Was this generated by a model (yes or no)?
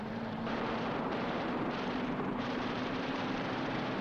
yes